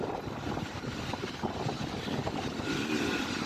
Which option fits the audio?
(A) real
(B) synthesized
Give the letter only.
A